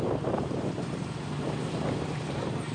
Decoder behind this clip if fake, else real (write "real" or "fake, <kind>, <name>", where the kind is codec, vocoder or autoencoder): fake, vocoder, BigVGAN v2